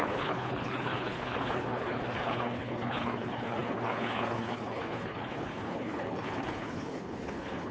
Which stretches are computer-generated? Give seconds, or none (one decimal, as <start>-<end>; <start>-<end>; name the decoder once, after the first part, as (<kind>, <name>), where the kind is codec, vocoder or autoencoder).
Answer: 0.0-7.7 (codec, HILCodec)